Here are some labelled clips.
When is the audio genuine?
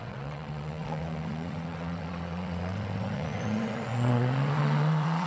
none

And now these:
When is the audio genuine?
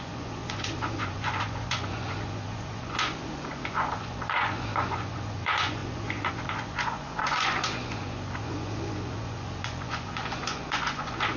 none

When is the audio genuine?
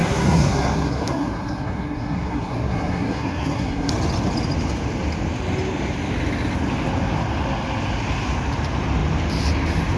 3.9-10.0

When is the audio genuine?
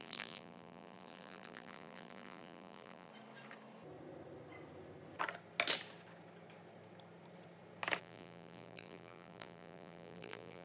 3.1-8.0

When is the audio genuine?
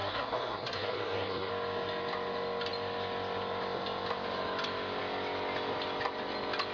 1.5-6.7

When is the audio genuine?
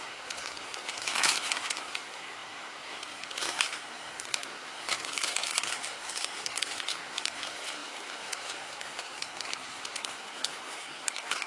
none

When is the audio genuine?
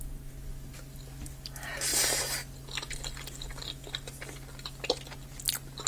0.0-5.9